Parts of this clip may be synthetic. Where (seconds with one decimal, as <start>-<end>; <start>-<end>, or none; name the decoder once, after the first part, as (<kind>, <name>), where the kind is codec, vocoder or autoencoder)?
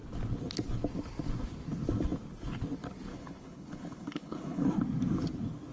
3.1-4.7 (codec, HILCodec)